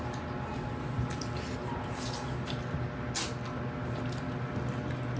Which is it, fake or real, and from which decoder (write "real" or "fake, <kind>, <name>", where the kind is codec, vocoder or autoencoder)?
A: real